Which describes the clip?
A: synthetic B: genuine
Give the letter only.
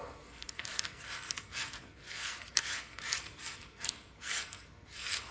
A